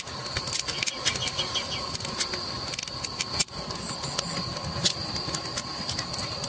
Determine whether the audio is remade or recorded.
recorded